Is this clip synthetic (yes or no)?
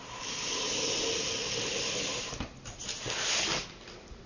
no